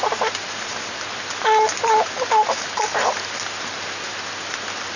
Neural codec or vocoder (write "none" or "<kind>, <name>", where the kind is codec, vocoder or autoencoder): none